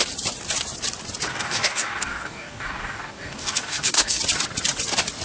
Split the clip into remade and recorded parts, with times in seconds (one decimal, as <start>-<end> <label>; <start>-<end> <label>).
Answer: 0.0-1.3 recorded; 1.3-4.2 remade; 4.2-5.2 recorded